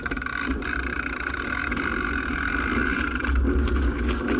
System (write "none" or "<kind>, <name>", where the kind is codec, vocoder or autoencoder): none